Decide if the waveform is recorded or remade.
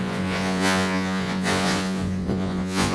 remade